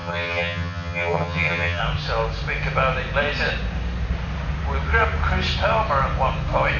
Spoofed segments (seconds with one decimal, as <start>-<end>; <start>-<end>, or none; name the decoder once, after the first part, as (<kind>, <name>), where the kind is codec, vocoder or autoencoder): 0.0-1.8 (vocoder, HiFi-GAN)